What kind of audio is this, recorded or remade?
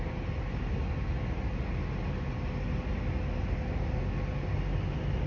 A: recorded